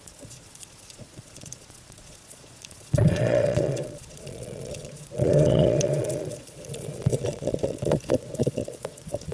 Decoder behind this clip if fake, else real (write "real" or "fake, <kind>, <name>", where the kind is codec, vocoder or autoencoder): fake, vocoder, Vocos